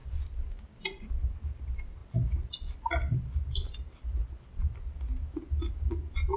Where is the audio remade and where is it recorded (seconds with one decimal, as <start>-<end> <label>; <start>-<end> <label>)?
0.0-6.4 recorded